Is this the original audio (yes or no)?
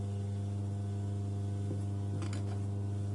yes